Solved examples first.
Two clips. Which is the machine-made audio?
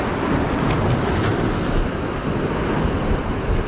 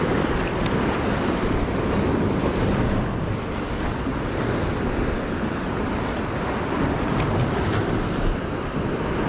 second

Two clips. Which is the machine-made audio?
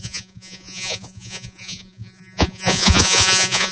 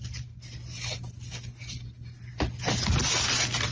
first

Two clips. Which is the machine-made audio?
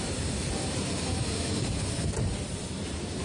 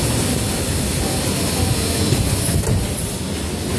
first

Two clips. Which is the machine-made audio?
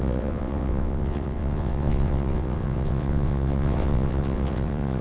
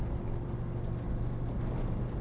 first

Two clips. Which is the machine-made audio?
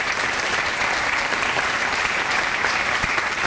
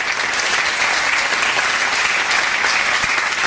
first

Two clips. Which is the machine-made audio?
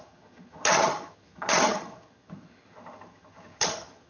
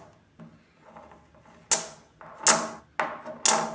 first